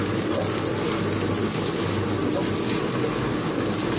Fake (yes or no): no